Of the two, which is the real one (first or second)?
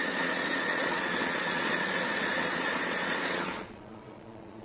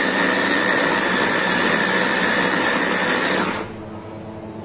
second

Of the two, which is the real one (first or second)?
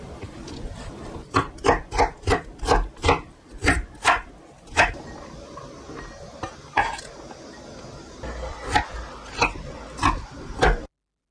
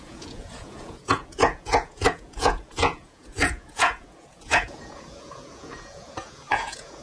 first